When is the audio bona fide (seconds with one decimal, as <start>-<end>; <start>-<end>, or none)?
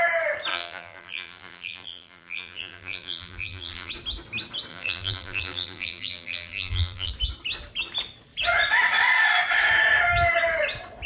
0.0-0.5; 3.9-4.7; 7.1-11.1